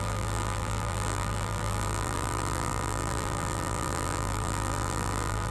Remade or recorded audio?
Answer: remade